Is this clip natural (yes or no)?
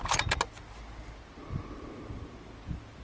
yes